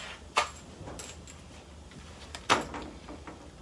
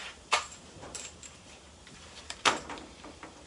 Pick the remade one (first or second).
second